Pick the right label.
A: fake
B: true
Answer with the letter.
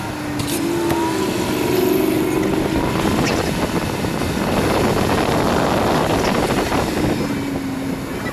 B